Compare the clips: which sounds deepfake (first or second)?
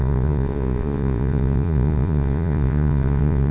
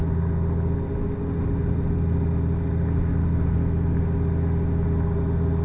first